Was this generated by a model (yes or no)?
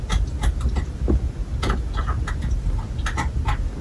no